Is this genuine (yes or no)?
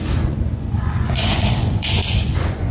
no